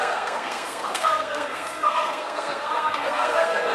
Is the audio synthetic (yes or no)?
yes